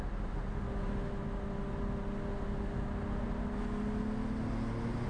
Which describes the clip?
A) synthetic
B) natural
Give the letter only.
B